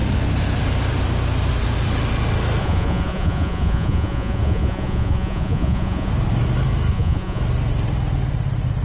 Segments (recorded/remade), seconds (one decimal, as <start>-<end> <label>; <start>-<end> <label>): 0.0-2.6 recorded; 2.6-6.1 remade; 6.1-6.9 recorded; 6.9-7.4 remade; 7.4-8.8 recorded